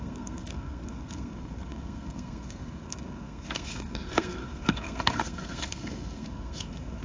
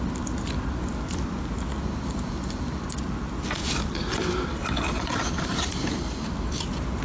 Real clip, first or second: second